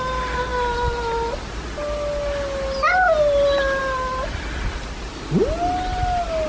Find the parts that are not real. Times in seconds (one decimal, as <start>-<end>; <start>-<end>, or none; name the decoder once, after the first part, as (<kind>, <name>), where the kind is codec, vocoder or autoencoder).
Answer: none